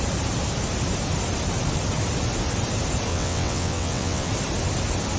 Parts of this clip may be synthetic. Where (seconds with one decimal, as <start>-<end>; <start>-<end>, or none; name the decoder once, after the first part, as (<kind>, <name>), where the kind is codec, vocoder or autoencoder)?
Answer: 3.1-4.3 (vocoder, WaveNeXt)